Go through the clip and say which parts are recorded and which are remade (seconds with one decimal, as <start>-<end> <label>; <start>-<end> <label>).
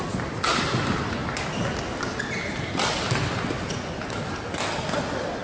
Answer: 0.0-5.4 recorded